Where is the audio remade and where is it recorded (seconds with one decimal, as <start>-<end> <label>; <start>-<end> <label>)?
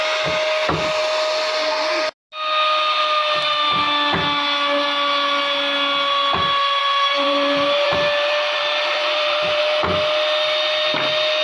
0.0-6.8 recorded; 6.8-9.6 remade; 9.6-11.4 recorded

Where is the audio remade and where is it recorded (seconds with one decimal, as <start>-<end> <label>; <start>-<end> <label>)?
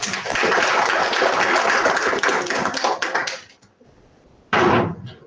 0.0-3.2 recorded; 3.2-4.7 remade; 4.7-5.3 recorded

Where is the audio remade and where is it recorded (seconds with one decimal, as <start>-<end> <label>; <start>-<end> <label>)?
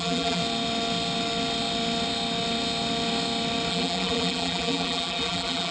0.0-0.4 remade; 0.4-3.7 recorded; 3.7-5.7 remade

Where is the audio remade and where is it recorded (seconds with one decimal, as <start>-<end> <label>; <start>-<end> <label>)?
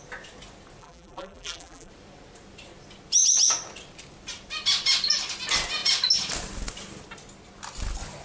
0.0-0.8 recorded; 0.8-1.9 remade; 1.9-8.2 recorded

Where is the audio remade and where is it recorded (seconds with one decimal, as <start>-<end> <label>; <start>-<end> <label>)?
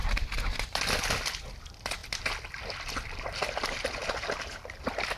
0.0-0.8 remade; 0.8-5.2 recorded